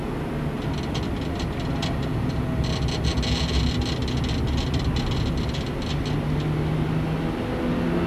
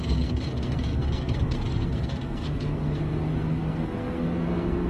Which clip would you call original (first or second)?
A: first